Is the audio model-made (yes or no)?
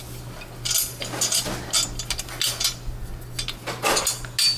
no